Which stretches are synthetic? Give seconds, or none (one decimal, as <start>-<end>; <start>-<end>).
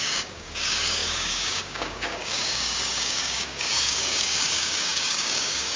0.0-5.8